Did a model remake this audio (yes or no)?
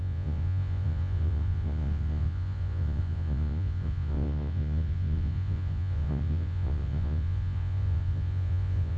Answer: yes